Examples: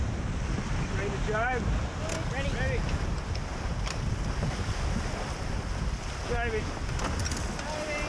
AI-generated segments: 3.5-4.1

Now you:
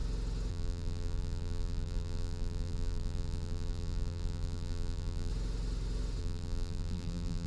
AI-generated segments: 0.5-5.3; 6.2-7.5

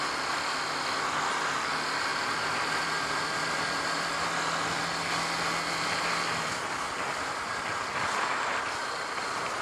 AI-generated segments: 2.1-4.4

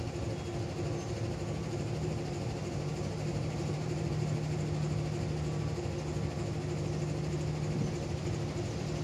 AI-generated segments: 1.6-4.1

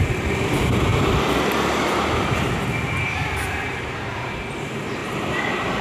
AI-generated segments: 0.9-4.4; 5.0-5.8

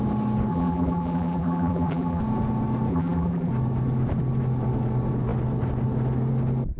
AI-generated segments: 0.5-2.2; 2.9-3.5